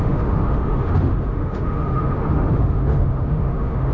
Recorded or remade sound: remade